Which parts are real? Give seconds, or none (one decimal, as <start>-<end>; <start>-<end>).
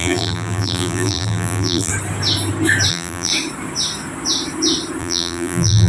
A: 1.9-2.9; 3.3-5.0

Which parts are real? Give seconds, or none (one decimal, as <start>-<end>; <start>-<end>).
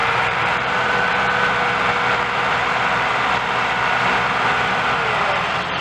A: 1.1-5.8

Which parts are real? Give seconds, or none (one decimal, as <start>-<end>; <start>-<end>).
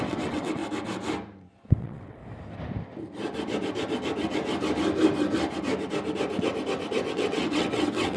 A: 0.6-1.7; 2.2-7.1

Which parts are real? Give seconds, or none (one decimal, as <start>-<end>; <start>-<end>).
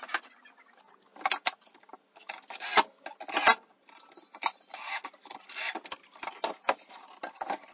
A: 0.0-7.7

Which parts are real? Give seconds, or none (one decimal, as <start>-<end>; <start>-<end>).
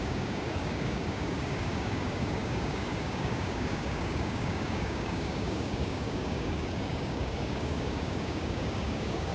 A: none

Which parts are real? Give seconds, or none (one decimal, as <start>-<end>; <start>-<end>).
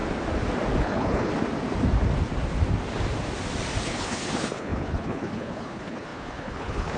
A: 0.0-0.8; 1.3-3.8